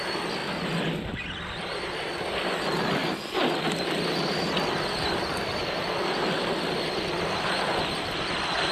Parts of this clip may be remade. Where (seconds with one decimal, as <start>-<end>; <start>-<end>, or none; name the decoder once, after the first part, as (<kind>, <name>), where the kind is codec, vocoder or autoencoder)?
none